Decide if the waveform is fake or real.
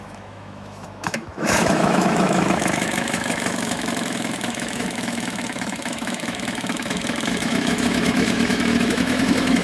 fake